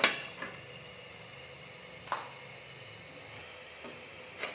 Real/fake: real